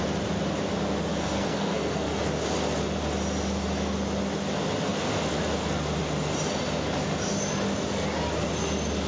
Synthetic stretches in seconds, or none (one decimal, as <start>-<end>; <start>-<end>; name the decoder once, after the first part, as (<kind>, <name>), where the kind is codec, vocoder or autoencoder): 1.1-2.2 (codec, SNAC)